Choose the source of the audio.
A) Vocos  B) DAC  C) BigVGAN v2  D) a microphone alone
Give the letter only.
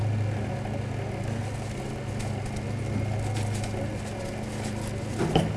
D